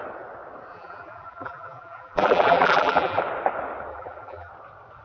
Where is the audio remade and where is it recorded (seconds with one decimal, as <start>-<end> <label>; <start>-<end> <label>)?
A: 0.0-0.7 recorded; 0.7-3.2 remade; 3.2-3.9 recorded; 3.9-4.5 remade; 4.5-5.0 recorded